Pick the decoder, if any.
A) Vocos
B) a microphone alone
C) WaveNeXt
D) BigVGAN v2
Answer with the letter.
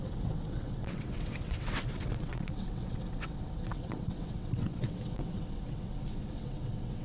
C